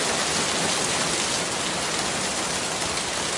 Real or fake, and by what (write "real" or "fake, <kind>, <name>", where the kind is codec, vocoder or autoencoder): real